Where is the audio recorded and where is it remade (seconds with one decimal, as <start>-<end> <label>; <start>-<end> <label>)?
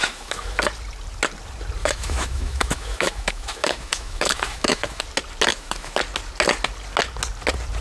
0.0-0.6 remade; 0.6-1.8 recorded; 1.8-5.0 remade; 5.0-5.5 recorded; 5.5-6.0 remade; 6.0-7.8 recorded